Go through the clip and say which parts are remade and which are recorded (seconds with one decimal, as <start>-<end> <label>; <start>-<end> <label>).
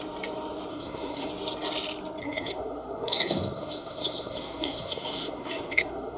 0.0-0.7 recorded; 0.7-1.3 remade; 1.3-2.2 recorded; 2.2-6.2 remade